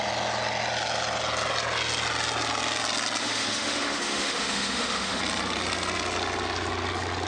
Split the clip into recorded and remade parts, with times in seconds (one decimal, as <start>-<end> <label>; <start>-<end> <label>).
0.0-3.2 recorded; 3.2-5.2 remade; 5.2-7.3 recorded